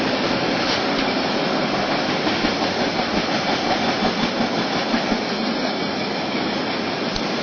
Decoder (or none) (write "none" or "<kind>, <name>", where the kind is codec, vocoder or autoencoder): none